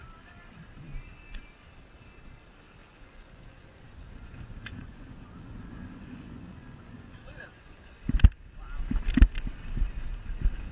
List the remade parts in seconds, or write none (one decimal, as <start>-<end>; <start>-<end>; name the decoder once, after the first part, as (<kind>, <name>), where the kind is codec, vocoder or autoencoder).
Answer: 2.8-8.0 (vocoder, Vocos)